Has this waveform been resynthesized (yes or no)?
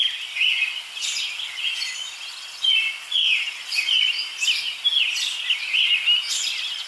no